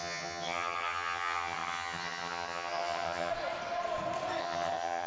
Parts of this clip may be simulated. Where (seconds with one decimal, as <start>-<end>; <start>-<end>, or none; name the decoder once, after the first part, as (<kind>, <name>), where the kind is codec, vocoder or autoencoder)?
0.0-3.3 (vocoder, HiFi-GAN); 4.4-5.1